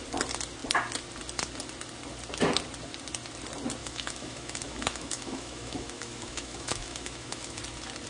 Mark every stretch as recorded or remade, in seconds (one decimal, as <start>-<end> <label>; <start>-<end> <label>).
0.0-3.8 recorded; 3.8-7.6 remade; 7.6-8.1 recorded